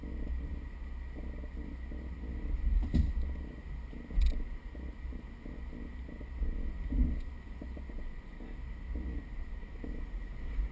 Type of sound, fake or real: real